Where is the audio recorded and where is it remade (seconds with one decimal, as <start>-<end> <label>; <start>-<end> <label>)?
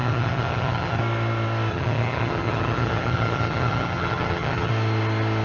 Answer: 0.0-1.0 remade; 1.0-1.7 recorded; 1.7-4.7 remade; 4.7-5.4 recorded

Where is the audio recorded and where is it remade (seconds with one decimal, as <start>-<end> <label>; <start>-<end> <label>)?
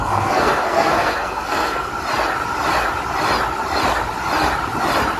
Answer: 0.0-1.9 remade; 1.9-5.2 recorded